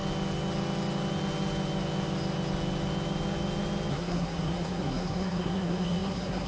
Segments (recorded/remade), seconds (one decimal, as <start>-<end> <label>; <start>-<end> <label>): 0.0-3.9 recorded; 3.9-6.5 remade